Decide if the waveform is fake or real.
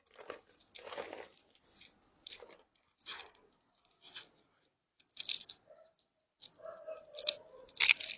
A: real